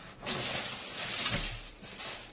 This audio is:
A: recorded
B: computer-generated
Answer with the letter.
A